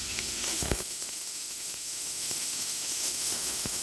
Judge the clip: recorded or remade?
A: remade